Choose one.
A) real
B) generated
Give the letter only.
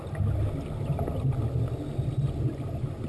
A